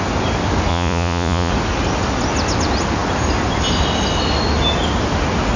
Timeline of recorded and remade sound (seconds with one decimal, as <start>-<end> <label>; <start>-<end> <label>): 0.0-0.7 recorded; 0.7-1.5 remade; 1.5-5.6 recorded